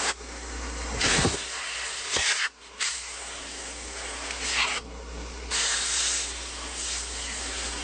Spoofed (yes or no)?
yes